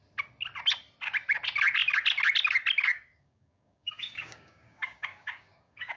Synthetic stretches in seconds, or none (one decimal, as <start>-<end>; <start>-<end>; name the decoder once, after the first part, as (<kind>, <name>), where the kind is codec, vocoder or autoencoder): 2.9-6.0 (codec, DAC)